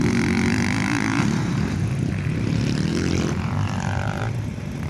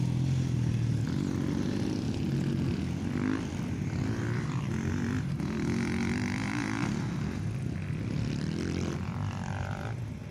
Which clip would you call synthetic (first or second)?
first